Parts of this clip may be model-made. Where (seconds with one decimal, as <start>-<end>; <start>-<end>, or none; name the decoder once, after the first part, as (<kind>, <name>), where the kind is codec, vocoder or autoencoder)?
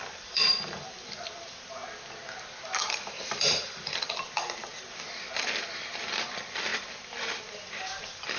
0.0-1.8 (vocoder, BigVGAN v2); 2.9-8.4